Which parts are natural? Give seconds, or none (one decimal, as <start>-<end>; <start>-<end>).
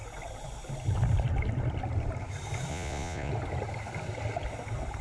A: 0.0-2.7; 3.3-5.0